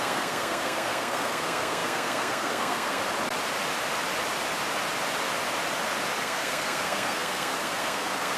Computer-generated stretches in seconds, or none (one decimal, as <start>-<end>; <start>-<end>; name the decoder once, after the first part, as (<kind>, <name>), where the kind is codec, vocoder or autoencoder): 0.0-3.0 (codec, SNAC); 6.2-8.4